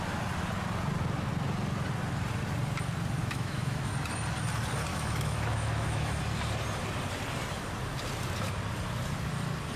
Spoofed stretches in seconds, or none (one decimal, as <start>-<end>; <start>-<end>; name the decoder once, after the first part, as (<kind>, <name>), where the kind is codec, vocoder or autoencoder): 3.2-3.9 (autoencoder, DAC-VAE); 4.9-6.2